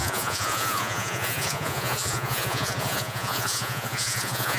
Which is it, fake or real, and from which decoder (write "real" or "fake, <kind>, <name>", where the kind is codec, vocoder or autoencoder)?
fake, vocoder, Vocos